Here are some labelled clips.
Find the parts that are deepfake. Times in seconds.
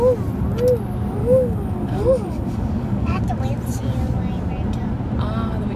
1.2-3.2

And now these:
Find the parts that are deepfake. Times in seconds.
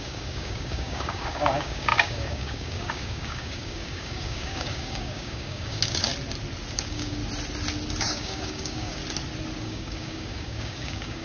0.0-6.1; 6.7-7.2; 8.0-9.0; 9.6-11.2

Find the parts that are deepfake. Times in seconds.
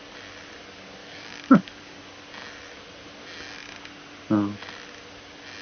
1.0-2.0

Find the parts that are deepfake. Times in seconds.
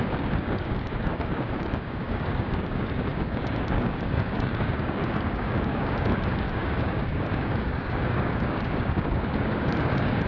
0.0-10.3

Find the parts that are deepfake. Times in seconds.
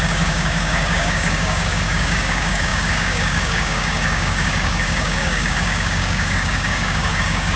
0.0-7.6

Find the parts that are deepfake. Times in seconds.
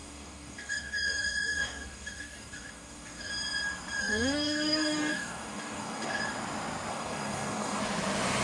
0.0-3.3; 4.0-6.2; 6.9-7.8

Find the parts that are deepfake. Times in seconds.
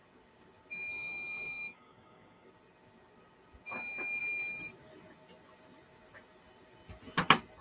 0.9-2.5